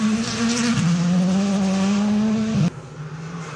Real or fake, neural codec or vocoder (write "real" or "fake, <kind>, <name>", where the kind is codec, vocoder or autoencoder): real